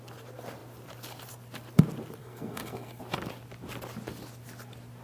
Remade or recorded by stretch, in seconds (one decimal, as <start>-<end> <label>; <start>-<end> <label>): 0.0-2.2 recorded; 2.2-3.0 remade; 3.0-5.0 recorded